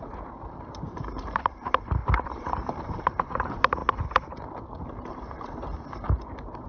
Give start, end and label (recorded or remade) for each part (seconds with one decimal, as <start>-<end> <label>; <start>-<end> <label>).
0.0-3.8 remade; 3.8-5.1 recorded; 5.1-6.7 remade